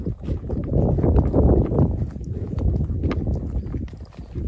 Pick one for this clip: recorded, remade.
recorded